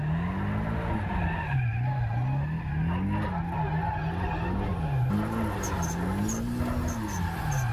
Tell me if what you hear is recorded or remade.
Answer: recorded